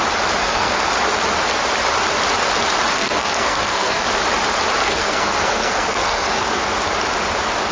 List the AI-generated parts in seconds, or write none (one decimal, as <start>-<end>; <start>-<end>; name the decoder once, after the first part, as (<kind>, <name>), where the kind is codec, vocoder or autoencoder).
0.4-0.9 (codec, SNAC); 3.0-4.0; 4.8-6.6